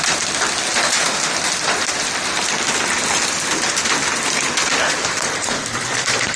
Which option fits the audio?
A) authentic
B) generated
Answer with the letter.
B